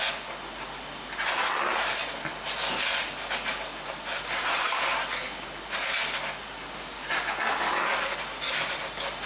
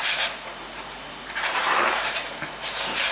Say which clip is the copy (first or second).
second